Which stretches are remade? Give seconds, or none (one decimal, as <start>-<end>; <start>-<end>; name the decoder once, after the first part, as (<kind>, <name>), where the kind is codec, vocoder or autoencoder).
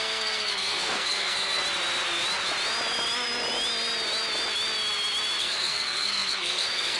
0.0-1.6 (codec, SNAC); 5.4-7.0